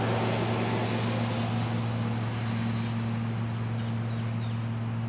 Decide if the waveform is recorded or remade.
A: recorded